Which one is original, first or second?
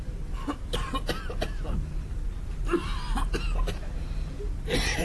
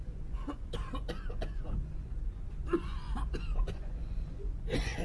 first